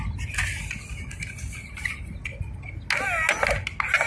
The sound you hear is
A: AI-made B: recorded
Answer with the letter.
B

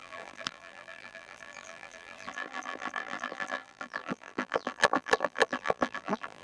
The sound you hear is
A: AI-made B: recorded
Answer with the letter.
A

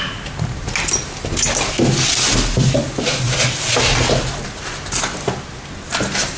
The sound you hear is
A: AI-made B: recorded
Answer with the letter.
B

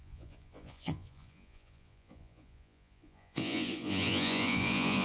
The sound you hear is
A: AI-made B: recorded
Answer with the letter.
A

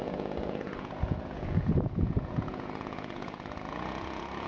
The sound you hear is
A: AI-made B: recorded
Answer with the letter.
A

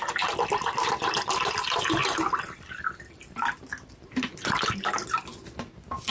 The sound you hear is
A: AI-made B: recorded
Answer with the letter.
B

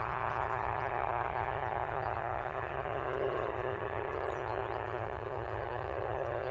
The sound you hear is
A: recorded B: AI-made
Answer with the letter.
B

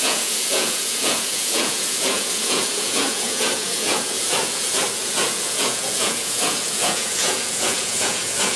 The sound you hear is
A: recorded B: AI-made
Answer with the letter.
B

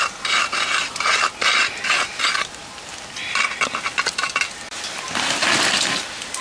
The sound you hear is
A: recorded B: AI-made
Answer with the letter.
A